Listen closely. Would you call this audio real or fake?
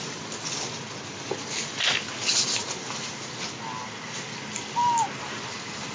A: real